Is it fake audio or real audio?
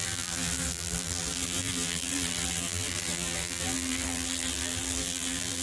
fake